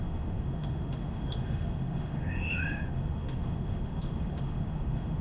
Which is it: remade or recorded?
remade